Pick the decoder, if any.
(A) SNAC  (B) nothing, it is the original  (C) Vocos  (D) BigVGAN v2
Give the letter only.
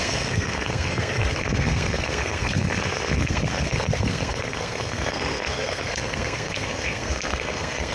A